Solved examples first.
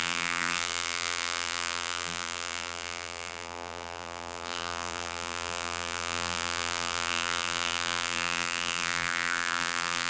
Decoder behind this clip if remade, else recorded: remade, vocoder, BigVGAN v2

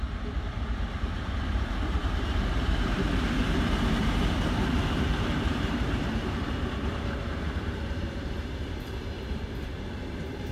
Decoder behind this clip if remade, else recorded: remade, vocoder, BigVGAN v2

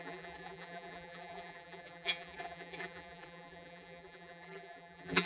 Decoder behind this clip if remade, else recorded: remade, vocoder, BigVGAN v2